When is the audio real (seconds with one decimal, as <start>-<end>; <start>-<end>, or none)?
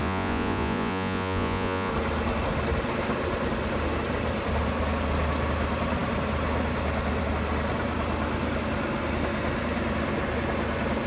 1.9-11.1